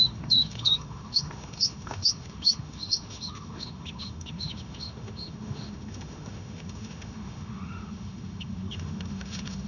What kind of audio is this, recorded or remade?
remade